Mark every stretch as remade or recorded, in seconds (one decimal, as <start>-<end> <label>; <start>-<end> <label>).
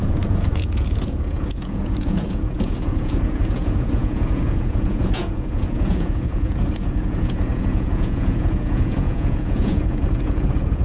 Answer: 0.0-10.8 remade